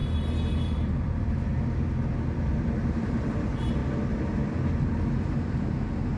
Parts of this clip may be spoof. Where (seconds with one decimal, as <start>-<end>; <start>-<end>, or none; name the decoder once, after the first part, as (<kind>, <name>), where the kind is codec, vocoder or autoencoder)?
0.5-1.5 (vocoder, BigVGAN v2); 2.9-3.8; 4.8-6.2

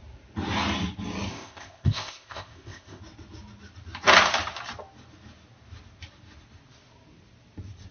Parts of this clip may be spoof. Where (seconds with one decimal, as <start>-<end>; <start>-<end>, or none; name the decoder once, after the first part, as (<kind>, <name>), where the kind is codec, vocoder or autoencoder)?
1.3-3.0 (codec, ZipCodec)

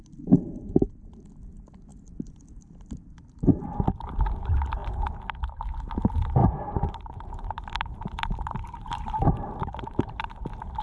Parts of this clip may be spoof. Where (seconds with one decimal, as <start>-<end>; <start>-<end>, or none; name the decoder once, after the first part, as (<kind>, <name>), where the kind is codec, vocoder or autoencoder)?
6.4-10.4 (vocoder, BigVGAN v2)

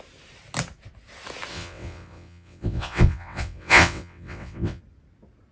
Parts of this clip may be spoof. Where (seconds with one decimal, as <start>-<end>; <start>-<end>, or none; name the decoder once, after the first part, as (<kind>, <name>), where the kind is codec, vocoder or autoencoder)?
1.5-4.8 (vocoder, WaveNeXt)

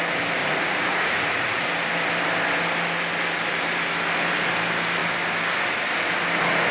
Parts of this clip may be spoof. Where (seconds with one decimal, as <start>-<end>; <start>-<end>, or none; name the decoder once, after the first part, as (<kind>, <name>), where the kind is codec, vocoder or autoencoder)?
0.4-1.7 (vocoder, Vocos)